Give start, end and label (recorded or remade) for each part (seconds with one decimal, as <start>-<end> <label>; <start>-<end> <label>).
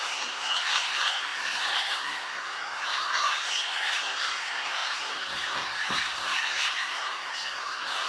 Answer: 0.0-8.1 remade